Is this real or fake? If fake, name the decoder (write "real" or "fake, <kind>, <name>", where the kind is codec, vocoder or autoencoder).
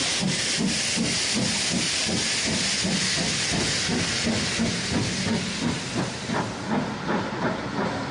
real